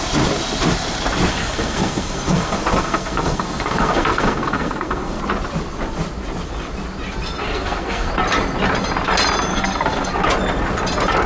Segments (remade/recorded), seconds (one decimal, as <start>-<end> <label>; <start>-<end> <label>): 0.0-1.3 recorded; 1.3-5.2 remade; 5.2-7.5 recorded; 7.5-8.1 remade; 8.1-9.5 recorded; 9.5-10.2 remade; 10.2-11.3 recorded